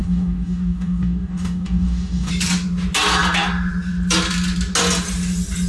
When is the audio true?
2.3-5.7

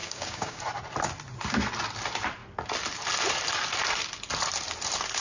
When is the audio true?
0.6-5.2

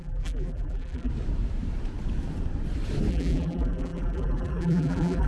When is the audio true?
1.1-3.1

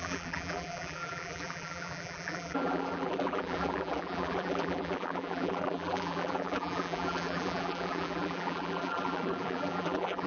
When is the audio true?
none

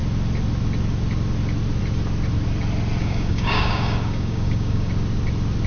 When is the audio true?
0.0-3.0; 4.9-5.7